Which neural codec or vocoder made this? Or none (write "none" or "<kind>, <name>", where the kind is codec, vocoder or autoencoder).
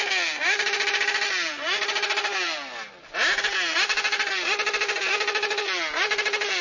none